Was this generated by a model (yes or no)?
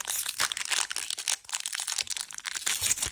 no